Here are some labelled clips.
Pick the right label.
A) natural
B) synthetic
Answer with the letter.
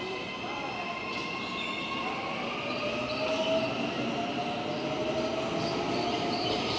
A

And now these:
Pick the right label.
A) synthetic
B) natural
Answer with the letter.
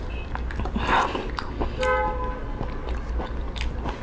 B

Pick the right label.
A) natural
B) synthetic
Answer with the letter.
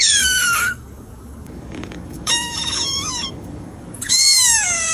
B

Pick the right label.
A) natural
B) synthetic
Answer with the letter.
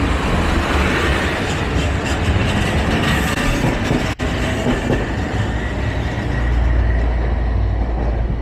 A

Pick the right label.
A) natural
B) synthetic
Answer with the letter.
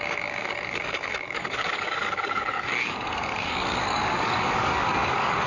B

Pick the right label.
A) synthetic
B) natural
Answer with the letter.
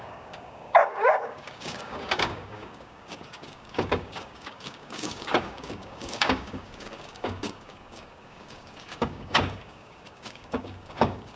A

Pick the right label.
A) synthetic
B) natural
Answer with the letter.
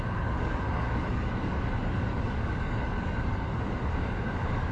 A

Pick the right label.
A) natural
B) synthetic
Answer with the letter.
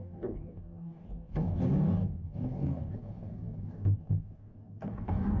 B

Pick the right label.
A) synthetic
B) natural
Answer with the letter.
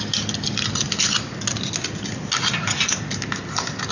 B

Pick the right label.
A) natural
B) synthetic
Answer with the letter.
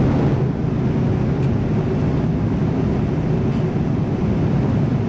A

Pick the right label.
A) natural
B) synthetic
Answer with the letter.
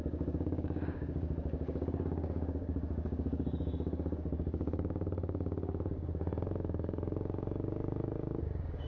B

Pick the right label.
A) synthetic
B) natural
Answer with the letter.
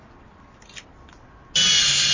B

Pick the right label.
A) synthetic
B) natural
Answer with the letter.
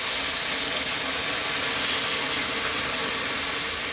B